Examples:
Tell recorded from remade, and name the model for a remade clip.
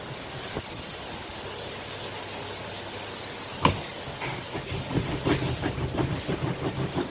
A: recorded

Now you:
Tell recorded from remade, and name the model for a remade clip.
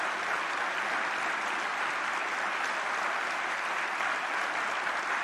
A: recorded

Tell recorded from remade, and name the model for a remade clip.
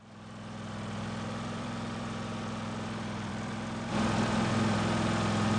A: remade, vocoder, BigVGAN v2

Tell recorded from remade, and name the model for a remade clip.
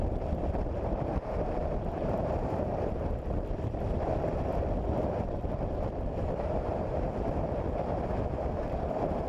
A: remade, vocoder, BigVGAN v2